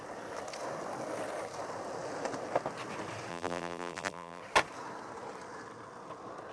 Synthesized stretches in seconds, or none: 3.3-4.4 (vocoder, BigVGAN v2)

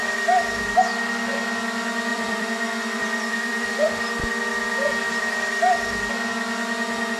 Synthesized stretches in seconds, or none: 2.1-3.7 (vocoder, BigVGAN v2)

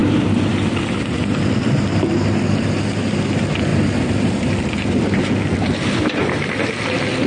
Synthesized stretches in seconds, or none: 0.0-2.0 (vocoder, BigVGAN v2); 3.7-5.2

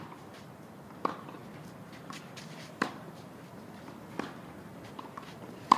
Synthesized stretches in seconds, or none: 0.0-5.8 (vocoder, BigVGAN v2)

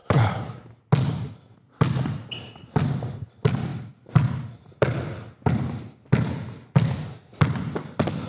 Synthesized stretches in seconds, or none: 0.0-0.8 (vocoder, BigVGAN v2)

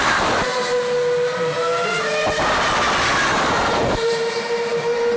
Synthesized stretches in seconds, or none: 0.0-0.5 (vocoder, BigVGAN v2); 3.5-5.2

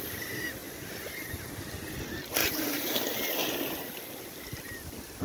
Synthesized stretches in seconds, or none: 0.6-1.6 (vocoder, BigVGAN v2); 2.4-3.0